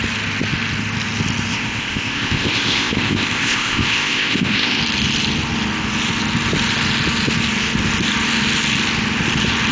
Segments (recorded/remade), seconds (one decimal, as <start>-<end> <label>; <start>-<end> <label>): 0.0-1.5 recorded; 1.5-4.8 remade; 4.8-9.7 recorded